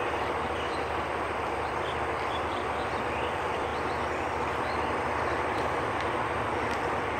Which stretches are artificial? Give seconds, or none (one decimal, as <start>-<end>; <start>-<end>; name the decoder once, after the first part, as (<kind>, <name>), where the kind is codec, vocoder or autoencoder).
0.0-3.7 (vocoder, BigVGAN v2); 4.6-7.2